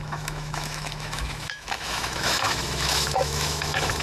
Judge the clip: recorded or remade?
remade